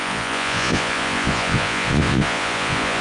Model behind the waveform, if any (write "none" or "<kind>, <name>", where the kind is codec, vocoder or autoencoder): vocoder, Vocos